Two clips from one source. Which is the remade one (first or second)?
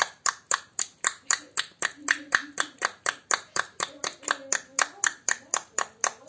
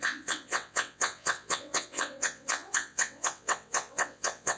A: second